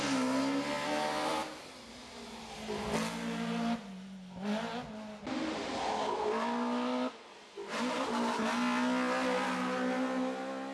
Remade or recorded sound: recorded